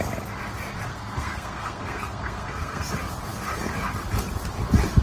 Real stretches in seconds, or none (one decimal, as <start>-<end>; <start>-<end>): 0.0-0.9; 2.9-5.0